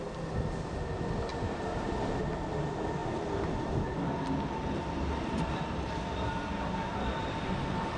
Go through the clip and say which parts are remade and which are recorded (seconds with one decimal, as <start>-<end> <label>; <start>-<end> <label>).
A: 0.0-1.3 recorded; 1.3-1.9 remade; 1.9-8.0 recorded